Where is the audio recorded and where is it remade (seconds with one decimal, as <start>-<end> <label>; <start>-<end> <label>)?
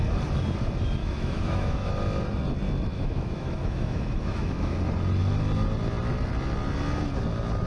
0.0-1.0 recorded; 1.0-1.9 remade; 1.9-2.9 recorded; 2.9-4.8 remade; 4.8-7.7 recorded